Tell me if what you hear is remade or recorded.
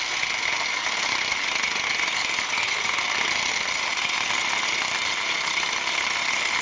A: recorded